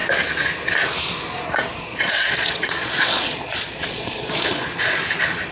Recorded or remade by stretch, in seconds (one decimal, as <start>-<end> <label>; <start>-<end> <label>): 0.0-1.7 recorded; 1.7-5.0 remade; 5.0-5.5 recorded